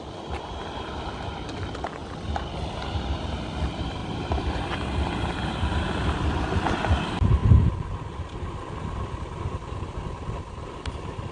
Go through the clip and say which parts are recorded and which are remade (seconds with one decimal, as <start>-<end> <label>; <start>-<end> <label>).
0.0-4.0 recorded; 4.0-6.0 remade; 6.0-11.3 recorded